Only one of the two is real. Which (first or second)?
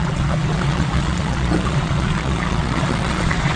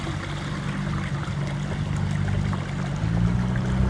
second